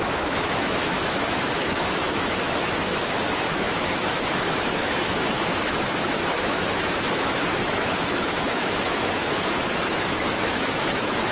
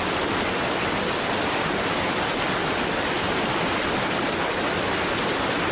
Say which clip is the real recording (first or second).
second